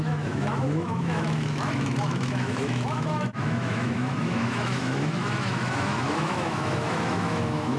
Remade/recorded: remade